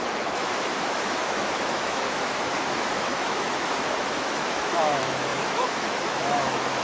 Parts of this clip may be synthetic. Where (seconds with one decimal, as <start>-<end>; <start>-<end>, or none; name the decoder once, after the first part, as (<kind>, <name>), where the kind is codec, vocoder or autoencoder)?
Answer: 0.0-6.8 (autoencoder, DAC-VAE)